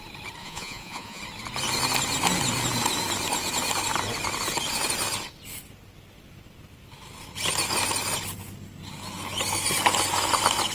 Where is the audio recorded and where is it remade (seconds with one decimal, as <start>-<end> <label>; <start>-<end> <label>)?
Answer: 0.0-0.4 recorded; 0.4-1.2 remade; 1.2-10.7 recorded